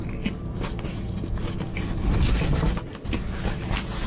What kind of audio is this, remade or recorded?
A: recorded